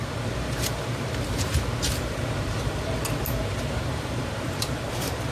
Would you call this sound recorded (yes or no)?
no